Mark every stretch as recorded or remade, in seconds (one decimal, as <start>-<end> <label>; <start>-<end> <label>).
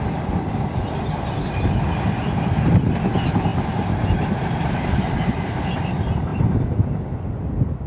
0.0-7.9 recorded